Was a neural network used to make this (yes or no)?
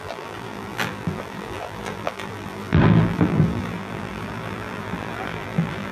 yes